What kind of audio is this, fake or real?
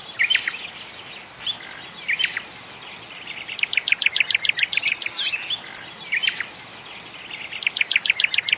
real